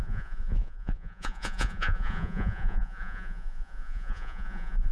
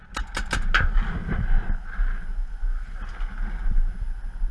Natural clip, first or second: second